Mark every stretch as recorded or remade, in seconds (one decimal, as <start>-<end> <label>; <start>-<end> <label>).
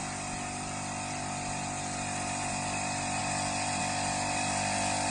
0.0-5.1 recorded